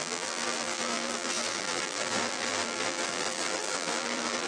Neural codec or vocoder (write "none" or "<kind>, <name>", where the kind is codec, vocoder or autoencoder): vocoder, BigVGAN v2